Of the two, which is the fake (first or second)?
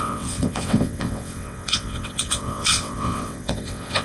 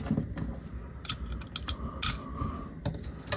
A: first